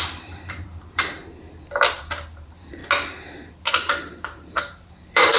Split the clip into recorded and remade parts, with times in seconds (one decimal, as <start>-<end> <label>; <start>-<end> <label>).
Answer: 0.0-1.2 remade; 1.2-1.9 recorded; 1.9-2.8 remade; 2.8-3.7 recorded; 3.7-5.4 remade